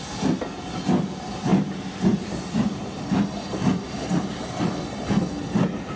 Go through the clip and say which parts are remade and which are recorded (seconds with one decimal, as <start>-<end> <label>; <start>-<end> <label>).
0.0-6.0 recorded